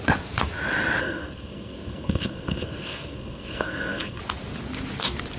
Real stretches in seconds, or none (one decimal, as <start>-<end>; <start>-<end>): 0.0-1.0; 4.2-5.4